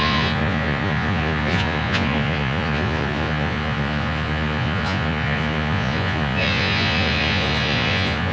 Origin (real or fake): fake